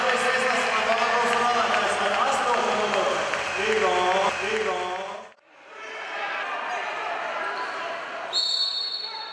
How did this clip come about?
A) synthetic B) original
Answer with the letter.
B